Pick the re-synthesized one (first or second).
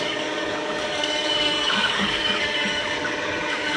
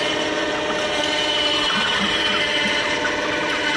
first